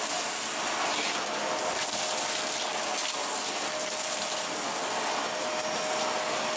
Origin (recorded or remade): recorded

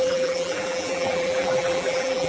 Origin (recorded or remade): remade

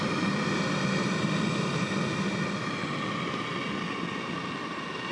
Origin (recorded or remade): recorded